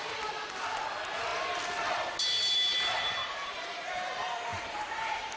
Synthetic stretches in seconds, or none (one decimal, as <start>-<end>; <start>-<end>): 3.2-3.9; 4.5-5.4